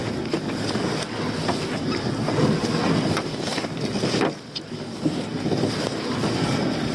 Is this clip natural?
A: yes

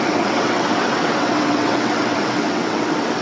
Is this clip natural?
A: no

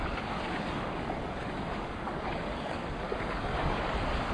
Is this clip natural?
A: no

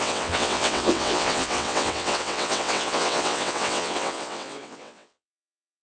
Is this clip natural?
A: no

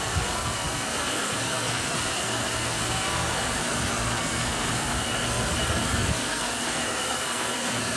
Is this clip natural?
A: no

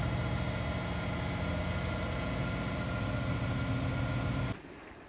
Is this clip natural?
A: yes